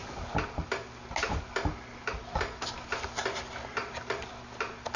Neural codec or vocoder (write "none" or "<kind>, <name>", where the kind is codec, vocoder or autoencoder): none